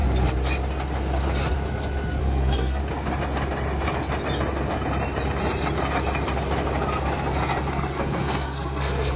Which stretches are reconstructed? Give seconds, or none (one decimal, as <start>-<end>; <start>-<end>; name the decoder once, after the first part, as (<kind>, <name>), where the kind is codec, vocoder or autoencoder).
2.2-2.8 (codec, SNAC); 7.7-9.2